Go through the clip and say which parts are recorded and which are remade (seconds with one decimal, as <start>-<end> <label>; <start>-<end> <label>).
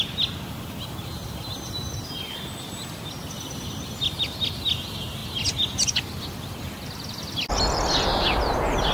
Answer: 0.0-8.9 recorded